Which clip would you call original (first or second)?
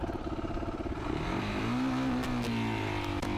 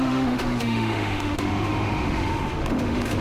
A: first